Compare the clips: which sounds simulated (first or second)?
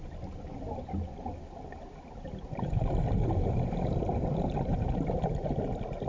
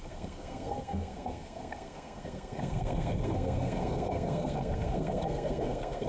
second